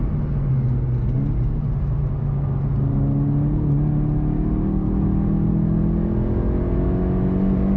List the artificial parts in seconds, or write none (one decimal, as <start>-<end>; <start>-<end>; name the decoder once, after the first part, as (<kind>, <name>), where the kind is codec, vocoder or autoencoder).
none